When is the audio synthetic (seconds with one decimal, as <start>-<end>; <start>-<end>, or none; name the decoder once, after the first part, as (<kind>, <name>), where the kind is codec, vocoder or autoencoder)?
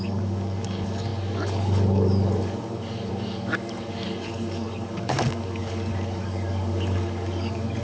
0.0-7.8 (codec, DAC)